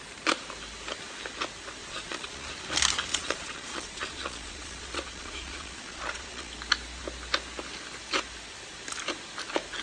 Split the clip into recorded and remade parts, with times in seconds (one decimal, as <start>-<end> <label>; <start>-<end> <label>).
0.0-1.8 recorded; 1.8-2.5 remade; 2.5-3.1 recorded; 3.1-6.5 remade; 6.5-9.8 recorded